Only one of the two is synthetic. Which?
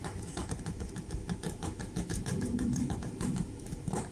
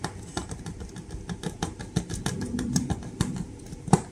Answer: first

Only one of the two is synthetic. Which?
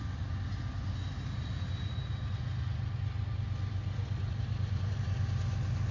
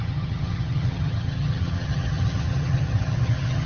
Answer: second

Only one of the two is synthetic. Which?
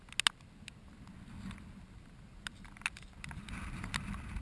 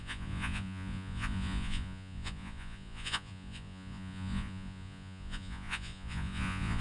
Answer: second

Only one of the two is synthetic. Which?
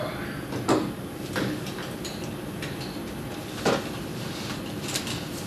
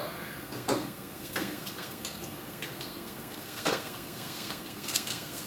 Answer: second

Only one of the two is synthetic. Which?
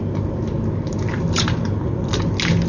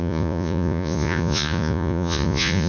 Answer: second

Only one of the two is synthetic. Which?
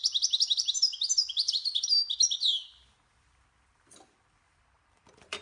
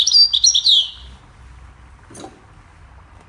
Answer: first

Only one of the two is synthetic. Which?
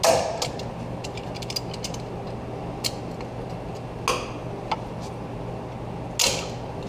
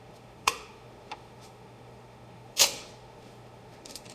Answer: second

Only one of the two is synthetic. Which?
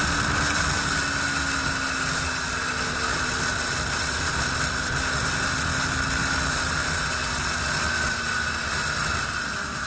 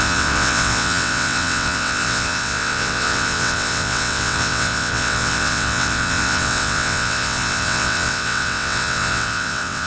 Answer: second